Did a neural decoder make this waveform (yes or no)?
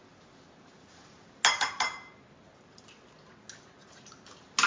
no